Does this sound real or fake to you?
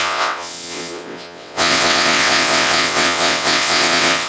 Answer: fake